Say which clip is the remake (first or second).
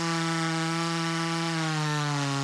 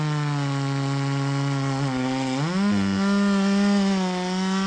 first